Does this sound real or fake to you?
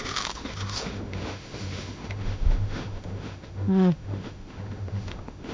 fake